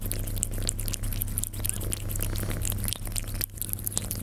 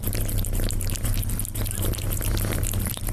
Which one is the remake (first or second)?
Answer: second